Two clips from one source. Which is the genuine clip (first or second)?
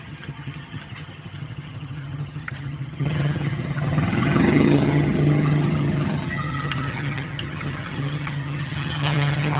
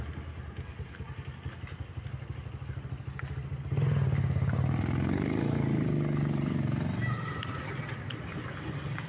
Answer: second